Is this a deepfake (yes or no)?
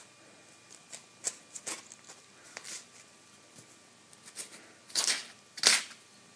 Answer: no